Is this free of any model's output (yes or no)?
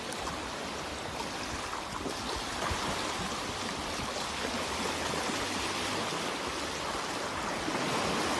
yes